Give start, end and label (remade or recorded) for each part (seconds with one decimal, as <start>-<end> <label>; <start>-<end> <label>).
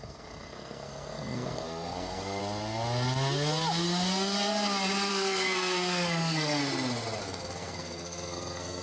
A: 0.0-2.4 remade; 2.4-5.1 recorded; 5.1-6.6 remade; 6.6-7.2 recorded; 7.2-8.8 remade